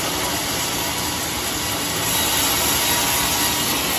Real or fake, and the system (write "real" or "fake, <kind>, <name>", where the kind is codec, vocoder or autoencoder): real